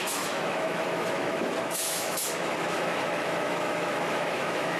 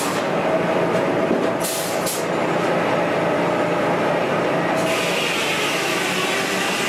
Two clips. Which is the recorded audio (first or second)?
second